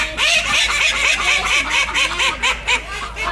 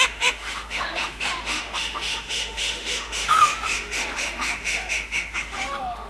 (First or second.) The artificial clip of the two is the second